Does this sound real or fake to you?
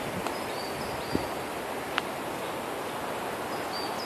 real